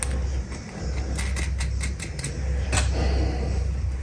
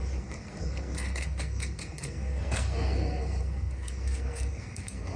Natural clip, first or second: first